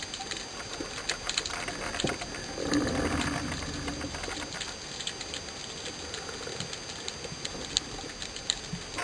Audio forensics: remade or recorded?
recorded